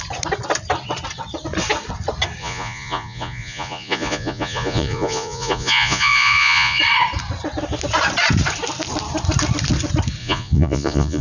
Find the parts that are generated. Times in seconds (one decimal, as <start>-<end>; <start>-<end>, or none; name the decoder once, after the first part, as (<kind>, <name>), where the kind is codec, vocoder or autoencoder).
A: 2.4-6.8 (vocoder, Vocos); 10.2-11.2